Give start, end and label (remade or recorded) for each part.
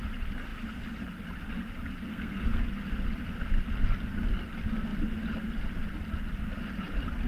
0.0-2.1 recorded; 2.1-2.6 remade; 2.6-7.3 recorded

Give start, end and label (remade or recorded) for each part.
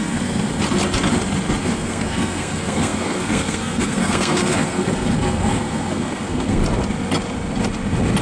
0.0-0.5 remade; 0.5-1.6 recorded; 1.6-6.6 remade; 6.6-8.2 recorded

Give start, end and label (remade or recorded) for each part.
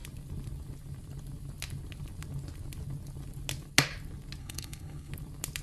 0.0-4.4 recorded; 4.4-5.1 remade; 5.1-5.6 recorded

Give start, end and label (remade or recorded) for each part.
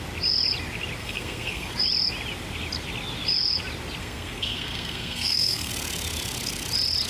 0.0-1.0 recorded; 1.0-1.7 remade; 1.7-4.0 recorded; 4.0-5.7 remade; 5.7-7.1 recorded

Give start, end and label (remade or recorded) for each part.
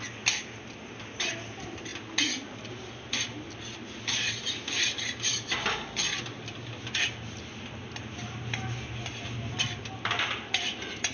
0.0-11.1 recorded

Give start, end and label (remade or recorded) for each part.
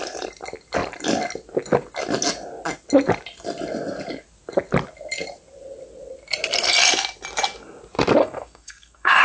0.0-8.2 recorded; 8.2-9.2 remade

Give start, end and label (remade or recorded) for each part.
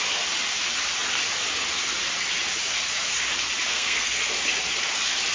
0.0-3.7 recorded; 3.7-4.2 remade; 4.2-5.3 recorded